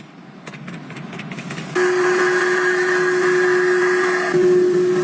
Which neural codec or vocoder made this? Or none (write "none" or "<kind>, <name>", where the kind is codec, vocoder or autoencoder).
none